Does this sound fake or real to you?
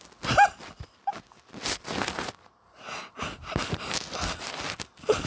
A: real